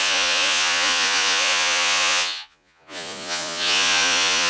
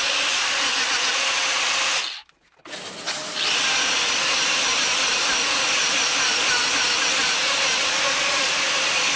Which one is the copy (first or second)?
first